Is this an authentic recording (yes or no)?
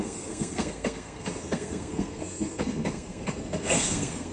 no